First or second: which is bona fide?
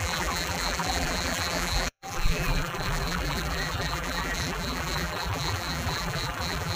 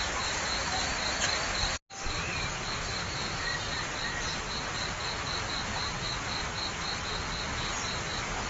second